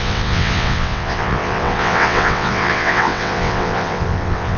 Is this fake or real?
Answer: fake